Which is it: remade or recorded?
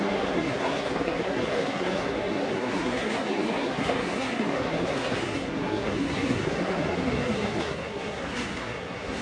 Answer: remade